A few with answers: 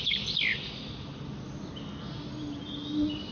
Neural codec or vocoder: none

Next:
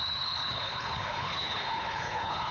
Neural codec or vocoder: codec, HILCodec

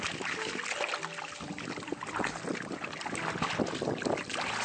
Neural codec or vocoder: none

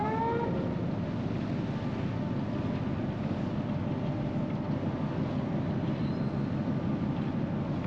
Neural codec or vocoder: none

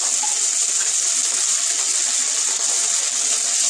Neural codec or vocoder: none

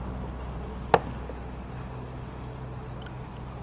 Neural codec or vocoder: none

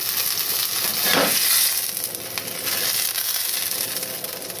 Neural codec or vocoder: none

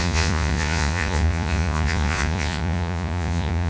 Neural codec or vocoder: vocoder, Vocos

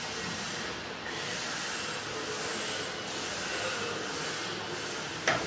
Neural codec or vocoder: none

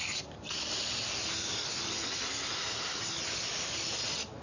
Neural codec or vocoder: none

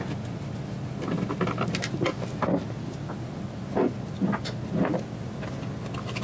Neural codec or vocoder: none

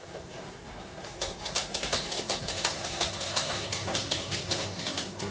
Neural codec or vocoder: codec, SNAC